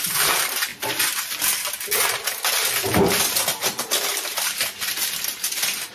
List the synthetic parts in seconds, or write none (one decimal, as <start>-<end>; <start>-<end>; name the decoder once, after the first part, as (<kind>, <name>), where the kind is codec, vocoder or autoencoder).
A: 0.7-1.4 (vocoder, BigVGAN v2)